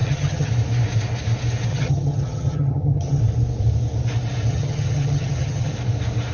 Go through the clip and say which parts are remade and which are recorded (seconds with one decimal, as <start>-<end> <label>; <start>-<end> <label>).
0.0-0.5 remade; 0.5-1.7 recorded; 1.7-3.2 remade; 3.2-4.5 recorded; 4.5-5.7 remade; 5.7-6.3 recorded